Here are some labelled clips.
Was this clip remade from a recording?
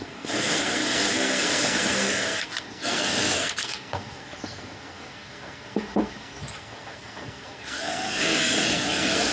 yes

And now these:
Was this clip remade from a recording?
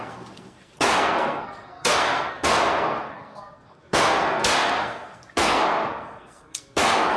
yes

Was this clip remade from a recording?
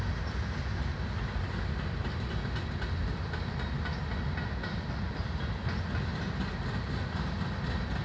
no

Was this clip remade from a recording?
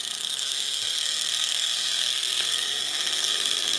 yes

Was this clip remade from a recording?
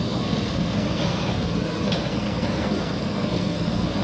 yes